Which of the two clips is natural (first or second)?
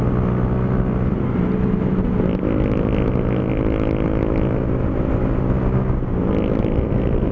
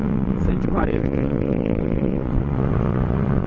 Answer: first